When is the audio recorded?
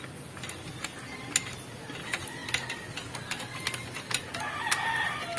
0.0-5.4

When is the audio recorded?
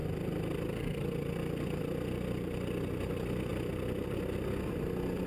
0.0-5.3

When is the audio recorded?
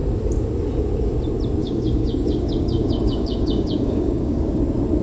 0.0-1.6; 4.6-5.0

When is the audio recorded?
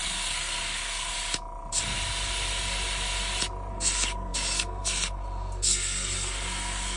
1.1-3.7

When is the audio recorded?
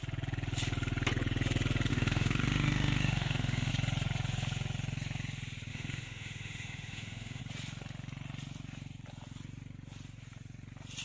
0.0-1.9; 3.7-5.7; 7.4-11.0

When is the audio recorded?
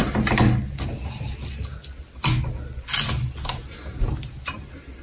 0.0-5.0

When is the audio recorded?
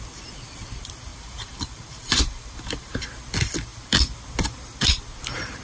0.0-1.1; 3.1-5.6